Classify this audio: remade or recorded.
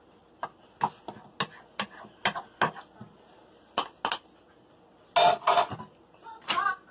recorded